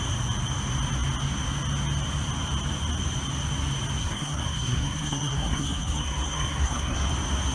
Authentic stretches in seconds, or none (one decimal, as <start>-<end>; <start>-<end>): 0.0-4.0; 7.1-7.5

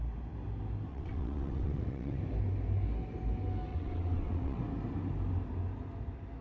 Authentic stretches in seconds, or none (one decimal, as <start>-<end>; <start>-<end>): 0.0-0.9; 2.2-3.7; 4.6-6.4

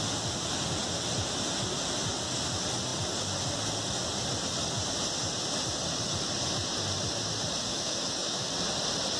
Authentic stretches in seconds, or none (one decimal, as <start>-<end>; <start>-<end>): 0.0-7.7; 8.5-9.2

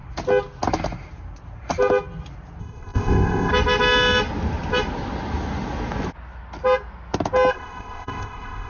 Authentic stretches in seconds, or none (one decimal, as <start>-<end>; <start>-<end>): 0.0-2.6; 3.5-7.5

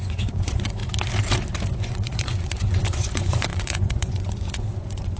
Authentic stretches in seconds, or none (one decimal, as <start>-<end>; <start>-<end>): 0.8-1.7

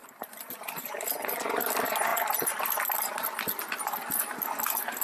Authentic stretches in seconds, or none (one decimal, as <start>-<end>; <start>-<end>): 0.9-5.0

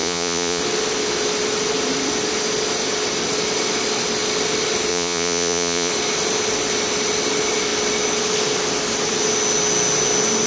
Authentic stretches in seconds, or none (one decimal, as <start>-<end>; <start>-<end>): 0.6-4.9; 5.9-10.5

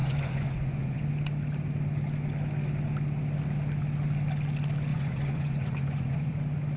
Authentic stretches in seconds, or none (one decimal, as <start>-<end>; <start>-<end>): 1.0-4.9; 6.3-6.8